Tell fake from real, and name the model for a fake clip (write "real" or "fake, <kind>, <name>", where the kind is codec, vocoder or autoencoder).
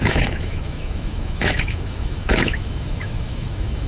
fake, autoencoder, DAC-VAE